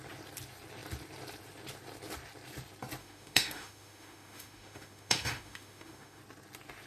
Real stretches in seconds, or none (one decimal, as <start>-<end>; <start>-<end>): 0.0-3.0; 6.2-6.9

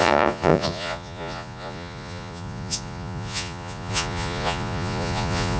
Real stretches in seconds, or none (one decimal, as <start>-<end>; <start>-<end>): none